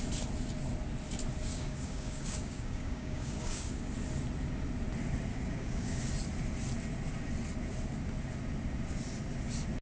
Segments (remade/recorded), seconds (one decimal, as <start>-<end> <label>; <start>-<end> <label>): 0.0-1.5 recorded; 1.5-3.9 remade; 3.9-5.3 recorded; 5.3-6.0 remade; 6.0-9.8 recorded